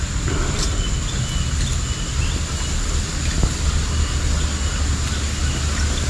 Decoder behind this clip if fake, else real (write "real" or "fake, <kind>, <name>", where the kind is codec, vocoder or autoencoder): real